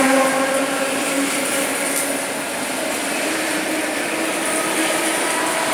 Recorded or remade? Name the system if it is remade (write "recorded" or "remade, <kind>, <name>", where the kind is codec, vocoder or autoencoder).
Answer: recorded